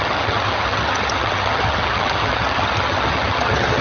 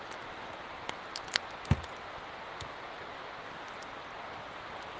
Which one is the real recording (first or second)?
second